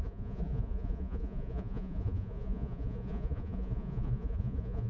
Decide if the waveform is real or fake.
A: fake